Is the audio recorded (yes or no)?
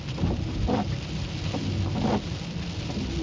yes